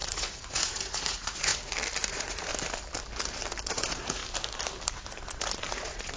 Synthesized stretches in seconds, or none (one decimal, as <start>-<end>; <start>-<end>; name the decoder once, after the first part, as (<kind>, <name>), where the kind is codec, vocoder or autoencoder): 0.0-1.5 (vocoder, Vocos); 2.1-2.5; 3.7-4.2; 5.8-6.2